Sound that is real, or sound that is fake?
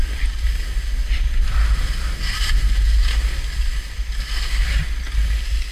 real